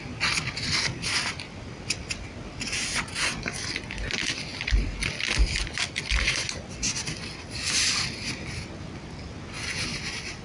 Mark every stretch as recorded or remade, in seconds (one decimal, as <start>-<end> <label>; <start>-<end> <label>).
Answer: 0.0-10.4 recorded